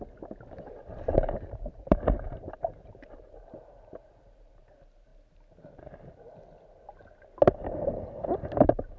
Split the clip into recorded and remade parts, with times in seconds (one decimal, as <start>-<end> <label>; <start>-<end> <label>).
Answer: 0.0-0.9 recorded; 0.9-4.6 remade; 4.6-9.0 recorded